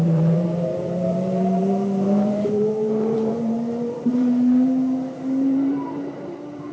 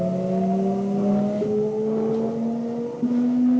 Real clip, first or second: second